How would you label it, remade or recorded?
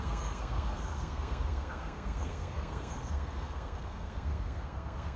remade